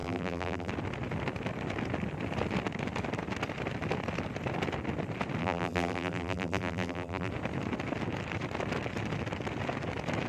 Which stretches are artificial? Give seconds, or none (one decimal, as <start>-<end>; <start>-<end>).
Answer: 0.0-0.7; 5.4-7.3